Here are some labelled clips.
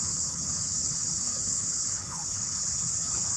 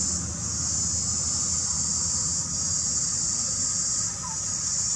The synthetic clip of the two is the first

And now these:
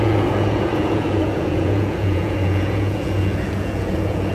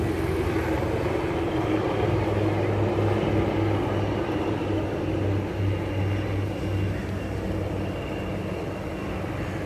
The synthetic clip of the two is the first